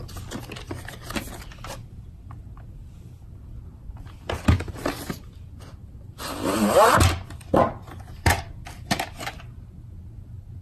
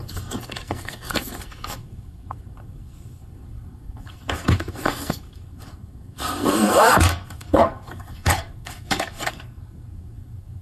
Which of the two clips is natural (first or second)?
first